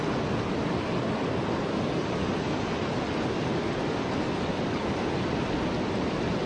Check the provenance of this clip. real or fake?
real